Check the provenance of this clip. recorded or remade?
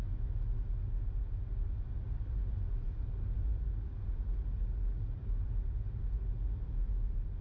recorded